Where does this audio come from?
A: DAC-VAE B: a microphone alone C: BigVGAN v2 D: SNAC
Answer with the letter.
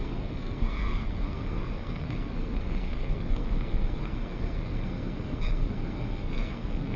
D